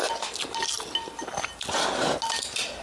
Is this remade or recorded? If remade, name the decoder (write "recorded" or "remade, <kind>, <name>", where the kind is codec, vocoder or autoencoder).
recorded